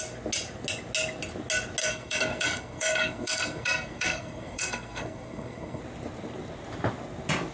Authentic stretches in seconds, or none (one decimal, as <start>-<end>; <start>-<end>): 0.0-1.8; 5.8-7.5